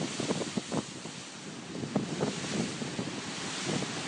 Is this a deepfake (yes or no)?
no